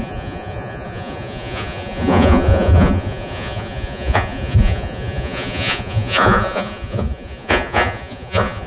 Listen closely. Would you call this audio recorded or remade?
remade